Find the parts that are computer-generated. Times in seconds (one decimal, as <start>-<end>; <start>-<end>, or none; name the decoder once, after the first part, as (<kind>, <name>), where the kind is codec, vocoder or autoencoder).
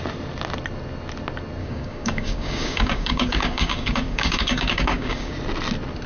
1.6-5.3 (codec, DAC)